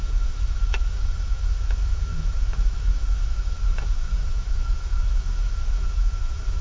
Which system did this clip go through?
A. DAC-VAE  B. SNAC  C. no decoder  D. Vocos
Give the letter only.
A